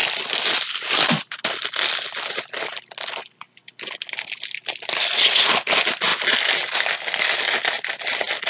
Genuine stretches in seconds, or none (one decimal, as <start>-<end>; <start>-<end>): 0.0-8.5